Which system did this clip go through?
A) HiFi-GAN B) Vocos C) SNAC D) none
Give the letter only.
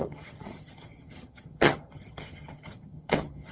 A